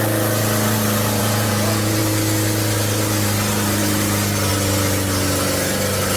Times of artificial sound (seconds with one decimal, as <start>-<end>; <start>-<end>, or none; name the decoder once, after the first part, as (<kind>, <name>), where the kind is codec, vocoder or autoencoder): 1.2-2.0 (vocoder, Vocos)